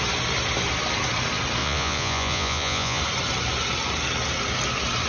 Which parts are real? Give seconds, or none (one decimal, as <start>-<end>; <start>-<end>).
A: 0.0-1.6; 3.0-5.1